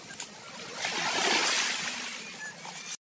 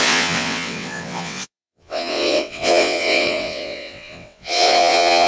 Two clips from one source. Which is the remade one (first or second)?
second